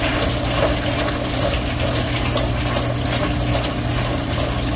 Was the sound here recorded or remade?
recorded